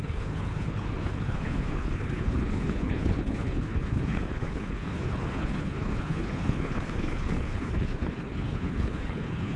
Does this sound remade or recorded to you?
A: remade